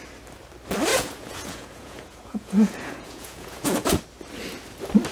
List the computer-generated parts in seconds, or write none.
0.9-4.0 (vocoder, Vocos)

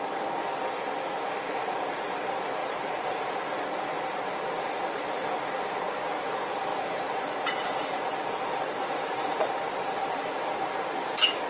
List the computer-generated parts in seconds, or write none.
2.6-3.5 (vocoder, BigVGAN v2); 6.7-10.3

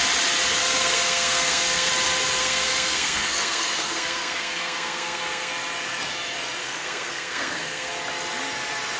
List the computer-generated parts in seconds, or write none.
0.6-1.9 (codec, SNAC); 2.4-5.5; 6.6-7.9

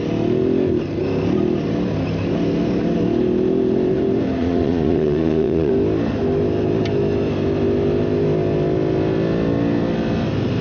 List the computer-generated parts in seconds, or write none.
4.4-5.7 (vocoder, Vocos)

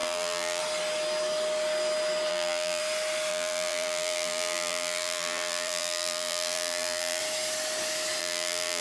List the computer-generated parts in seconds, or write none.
0.0-0.6 (vocoder, BigVGAN v2); 2.3-2.8; 3.3-7.2; 8.2-8.8